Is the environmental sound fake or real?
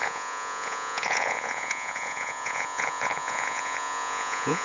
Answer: fake